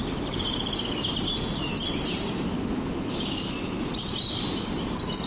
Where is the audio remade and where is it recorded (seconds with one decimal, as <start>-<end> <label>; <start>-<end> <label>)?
0.0-5.3 recorded